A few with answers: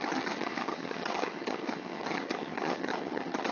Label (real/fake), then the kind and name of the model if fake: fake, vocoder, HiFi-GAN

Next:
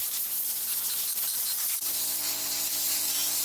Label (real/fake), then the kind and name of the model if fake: fake, vocoder, BigVGAN v2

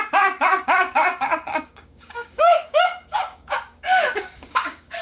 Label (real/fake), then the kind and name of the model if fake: fake, codec, DAC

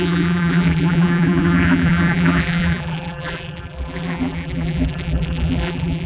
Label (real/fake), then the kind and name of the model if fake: fake, vocoder, BigVGAN v2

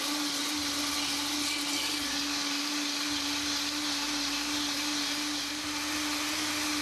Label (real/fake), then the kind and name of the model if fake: real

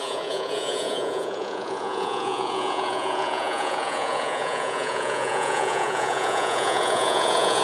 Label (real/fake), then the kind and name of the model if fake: fake, vocoder, Vocos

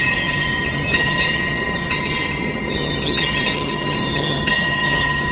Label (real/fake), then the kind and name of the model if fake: fake, vocoder, HiFi-GAN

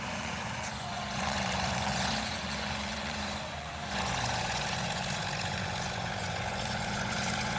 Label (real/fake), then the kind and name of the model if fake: fake, vocoder, Vocos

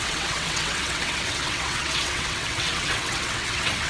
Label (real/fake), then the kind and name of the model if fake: fake, vocoder, WaveNeXt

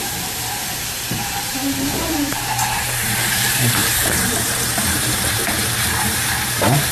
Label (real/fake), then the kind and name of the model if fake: fake, vocoder, BigVGAN v2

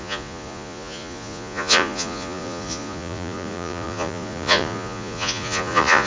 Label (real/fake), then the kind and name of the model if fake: fake, vocoder, Vocos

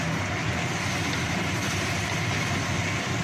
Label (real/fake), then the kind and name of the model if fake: real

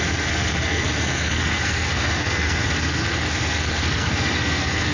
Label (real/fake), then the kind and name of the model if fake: fake, codec, SNAC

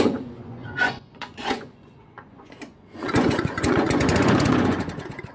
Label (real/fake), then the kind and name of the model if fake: fake, vocoder, Vocos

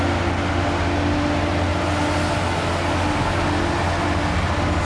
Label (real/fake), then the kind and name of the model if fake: real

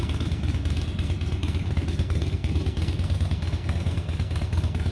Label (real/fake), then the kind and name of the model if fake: fake, codec, SNAC